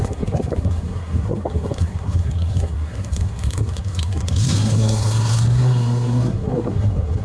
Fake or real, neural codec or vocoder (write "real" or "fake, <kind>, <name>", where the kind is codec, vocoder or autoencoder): fake, codec, SNAC